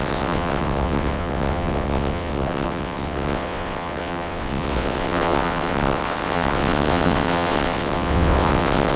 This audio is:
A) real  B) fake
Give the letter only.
B